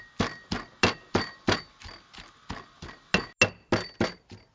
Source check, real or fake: real